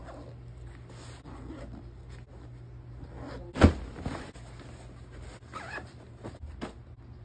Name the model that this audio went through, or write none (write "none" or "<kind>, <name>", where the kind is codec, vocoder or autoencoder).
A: none